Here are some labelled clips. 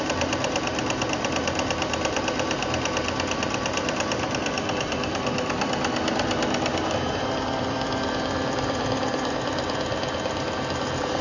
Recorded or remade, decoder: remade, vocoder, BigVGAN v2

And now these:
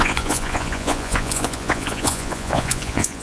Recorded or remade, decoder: remade, vocoder, Vocos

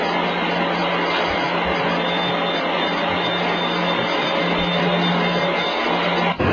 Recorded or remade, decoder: recorded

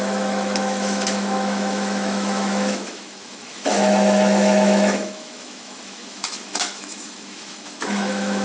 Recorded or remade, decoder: remade, autoencoder, DAC-VAE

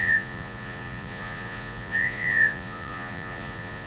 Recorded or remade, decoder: remade, vocoder, Vocos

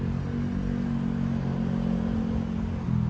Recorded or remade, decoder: recorded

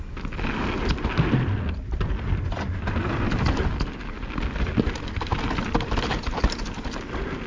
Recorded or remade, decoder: recorded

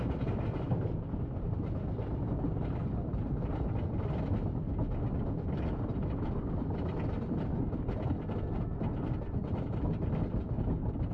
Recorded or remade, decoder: recorded